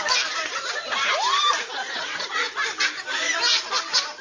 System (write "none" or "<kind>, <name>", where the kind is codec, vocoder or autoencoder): none